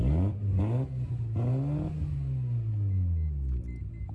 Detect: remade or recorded recorded